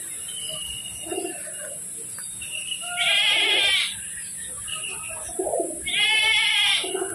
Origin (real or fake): real